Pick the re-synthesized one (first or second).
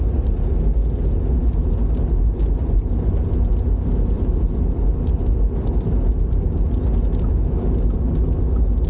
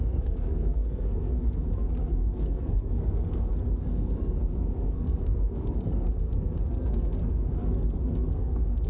second